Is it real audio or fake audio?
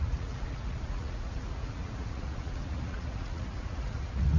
fake